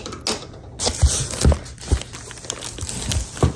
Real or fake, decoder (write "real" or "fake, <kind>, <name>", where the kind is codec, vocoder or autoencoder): real